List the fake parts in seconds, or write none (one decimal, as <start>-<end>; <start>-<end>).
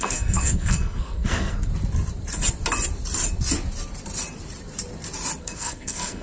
0.0-1.7; 5.4-6.2